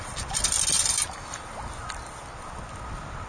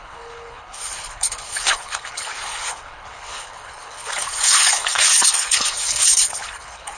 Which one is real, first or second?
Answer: first